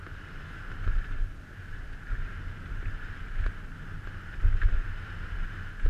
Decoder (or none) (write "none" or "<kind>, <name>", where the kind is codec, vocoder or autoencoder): none